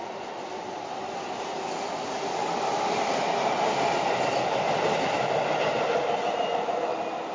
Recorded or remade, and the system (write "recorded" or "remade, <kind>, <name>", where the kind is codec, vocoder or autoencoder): recorded